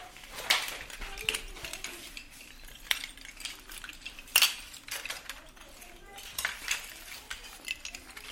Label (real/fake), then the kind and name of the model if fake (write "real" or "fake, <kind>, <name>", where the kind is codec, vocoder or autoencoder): real